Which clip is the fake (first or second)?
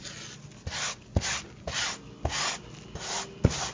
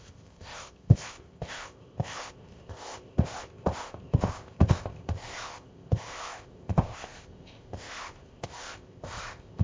second